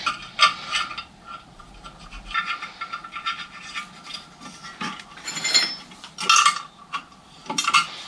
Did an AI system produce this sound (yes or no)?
no